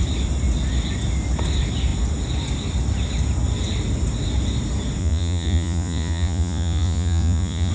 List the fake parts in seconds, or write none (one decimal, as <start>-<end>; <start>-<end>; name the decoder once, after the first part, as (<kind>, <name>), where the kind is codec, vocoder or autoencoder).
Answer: 5.0-7.7 (vocoder, Vocos)